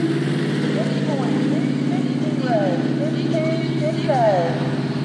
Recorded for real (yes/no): yes